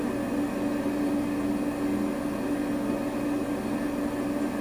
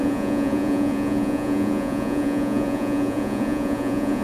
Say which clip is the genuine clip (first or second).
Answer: first